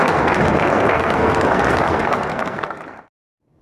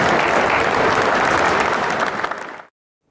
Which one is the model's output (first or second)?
first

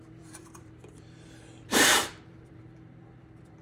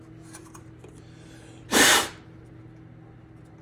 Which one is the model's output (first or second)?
first